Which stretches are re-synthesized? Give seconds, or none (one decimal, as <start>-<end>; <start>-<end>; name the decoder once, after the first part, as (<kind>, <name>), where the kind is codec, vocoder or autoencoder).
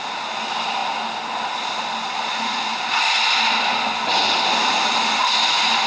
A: none